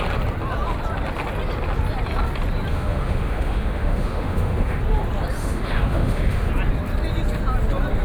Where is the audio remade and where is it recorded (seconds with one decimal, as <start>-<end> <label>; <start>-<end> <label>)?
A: 0.0-2.7 recorded; 2.7-4.8 remade; 4.8-5.4 recorded; 5.4-6.5 remade; 6.5-8.0 recorded